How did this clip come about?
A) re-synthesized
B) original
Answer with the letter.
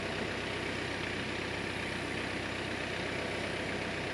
B